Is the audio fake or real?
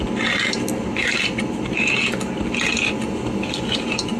real